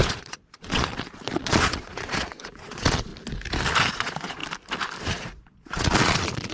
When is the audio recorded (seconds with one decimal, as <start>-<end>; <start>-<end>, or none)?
3.1-3.9; 4.4-5.0